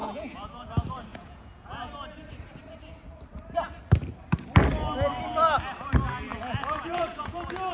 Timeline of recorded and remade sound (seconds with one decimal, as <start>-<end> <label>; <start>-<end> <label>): 0.0-0.7 remade; 0.7-1.1 recorded; 1.1-1.9 remade; 1.9-6.3 recorded; 6.3-7.7 remade

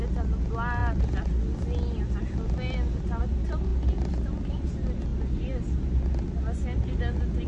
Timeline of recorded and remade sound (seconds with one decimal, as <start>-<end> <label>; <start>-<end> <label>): 0.0-7.5 recorded